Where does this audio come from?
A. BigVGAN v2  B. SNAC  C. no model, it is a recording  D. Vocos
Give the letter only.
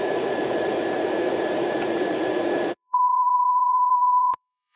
D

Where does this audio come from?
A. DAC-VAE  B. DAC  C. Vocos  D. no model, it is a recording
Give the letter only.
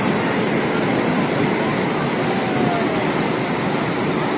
D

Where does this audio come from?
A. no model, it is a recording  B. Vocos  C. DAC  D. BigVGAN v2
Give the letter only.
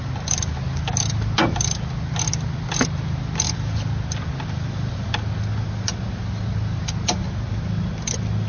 A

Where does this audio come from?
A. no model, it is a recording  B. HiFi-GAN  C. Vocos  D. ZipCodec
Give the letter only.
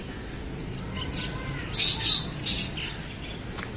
A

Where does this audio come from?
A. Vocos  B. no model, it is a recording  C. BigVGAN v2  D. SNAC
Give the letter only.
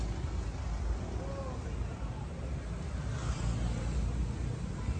B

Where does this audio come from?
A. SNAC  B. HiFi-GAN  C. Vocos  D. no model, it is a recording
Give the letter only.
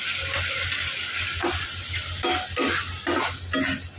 D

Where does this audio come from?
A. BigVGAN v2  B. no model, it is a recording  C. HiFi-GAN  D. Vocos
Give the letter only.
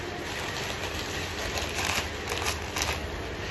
B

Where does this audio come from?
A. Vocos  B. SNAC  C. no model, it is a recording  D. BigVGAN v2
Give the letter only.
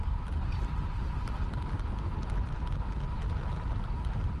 C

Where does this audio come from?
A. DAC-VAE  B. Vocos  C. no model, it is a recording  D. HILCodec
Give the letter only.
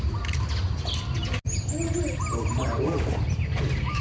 C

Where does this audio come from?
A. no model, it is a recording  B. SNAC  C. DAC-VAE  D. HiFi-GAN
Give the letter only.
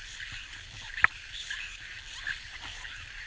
A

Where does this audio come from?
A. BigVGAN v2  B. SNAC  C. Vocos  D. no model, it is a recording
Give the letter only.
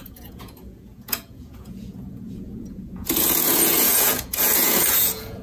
C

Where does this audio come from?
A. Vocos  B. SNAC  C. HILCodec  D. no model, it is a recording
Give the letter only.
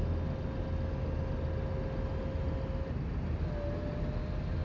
D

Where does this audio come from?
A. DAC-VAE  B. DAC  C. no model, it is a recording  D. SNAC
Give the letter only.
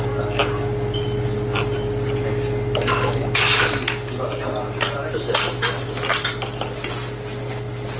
C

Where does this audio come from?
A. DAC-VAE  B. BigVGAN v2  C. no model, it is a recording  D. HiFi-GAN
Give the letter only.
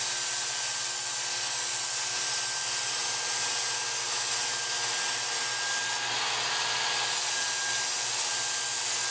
C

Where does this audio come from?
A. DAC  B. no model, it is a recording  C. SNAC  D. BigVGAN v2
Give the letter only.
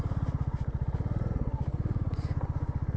B